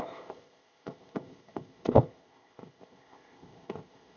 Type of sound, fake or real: fake